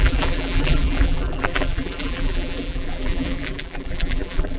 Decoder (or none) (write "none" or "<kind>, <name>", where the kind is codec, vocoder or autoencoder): vocoder, BigVGAN v2